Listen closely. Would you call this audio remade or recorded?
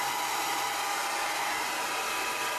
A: recorded